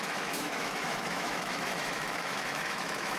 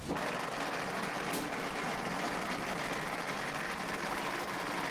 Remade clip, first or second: first